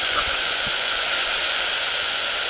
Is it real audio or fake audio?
fake